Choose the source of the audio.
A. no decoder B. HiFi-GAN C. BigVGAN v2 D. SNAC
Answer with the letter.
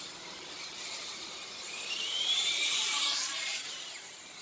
C